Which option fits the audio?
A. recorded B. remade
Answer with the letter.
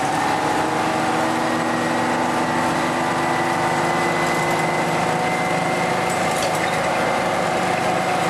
A